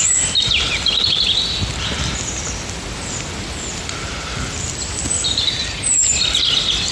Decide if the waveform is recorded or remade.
recorded